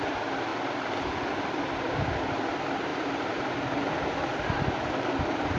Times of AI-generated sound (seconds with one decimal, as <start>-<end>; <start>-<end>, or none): 2.9-3.5; 4.3-5.6